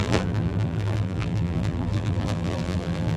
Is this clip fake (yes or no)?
yes